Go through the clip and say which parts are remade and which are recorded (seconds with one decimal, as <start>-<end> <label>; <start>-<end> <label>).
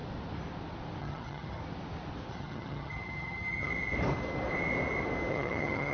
0.0-1.0 recorded; 1.0-1.6 remade; 1.6-2.3 recorded; 2.3-3.7 remade; 3.7-5.3 recorded; 5.3-5.9 remade